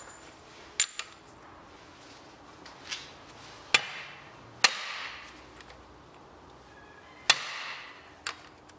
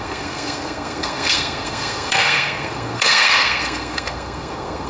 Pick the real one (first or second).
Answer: first